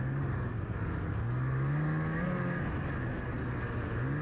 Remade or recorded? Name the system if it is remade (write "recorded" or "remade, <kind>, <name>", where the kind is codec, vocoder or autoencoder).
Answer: recorded